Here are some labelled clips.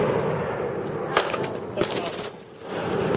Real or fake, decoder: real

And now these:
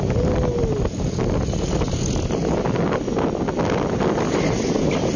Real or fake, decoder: real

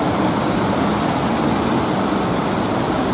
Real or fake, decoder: real